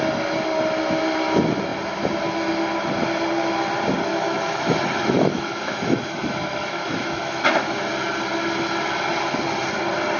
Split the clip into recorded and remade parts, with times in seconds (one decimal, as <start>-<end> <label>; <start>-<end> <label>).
0.0-4.1 recorded; 4.1-7.9 remade; 7.9-10.2 recorded